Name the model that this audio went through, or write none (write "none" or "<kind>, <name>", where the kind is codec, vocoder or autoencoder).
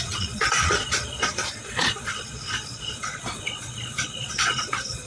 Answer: vocoder, Vocos